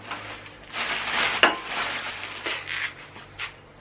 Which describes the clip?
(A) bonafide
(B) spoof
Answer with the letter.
A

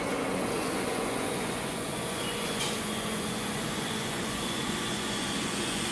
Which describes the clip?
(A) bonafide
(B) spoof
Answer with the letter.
B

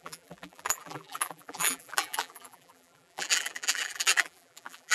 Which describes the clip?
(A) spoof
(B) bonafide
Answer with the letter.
A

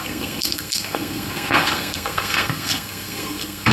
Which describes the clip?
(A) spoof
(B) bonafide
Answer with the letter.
A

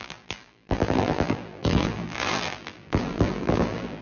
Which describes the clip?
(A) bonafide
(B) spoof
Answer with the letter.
B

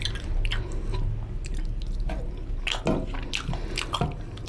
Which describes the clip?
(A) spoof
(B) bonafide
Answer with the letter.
B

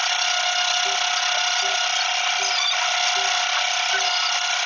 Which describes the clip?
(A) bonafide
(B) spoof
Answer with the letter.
A